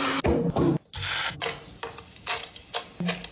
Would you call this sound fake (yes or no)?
no